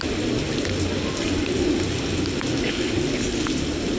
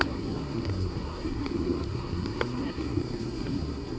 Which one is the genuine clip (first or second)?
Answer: first